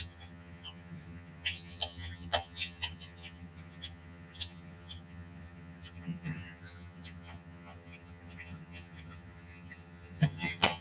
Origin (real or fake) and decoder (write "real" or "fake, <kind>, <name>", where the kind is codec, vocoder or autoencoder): fake, vocoder, HiFi-GAN